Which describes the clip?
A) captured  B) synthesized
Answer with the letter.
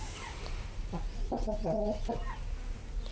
A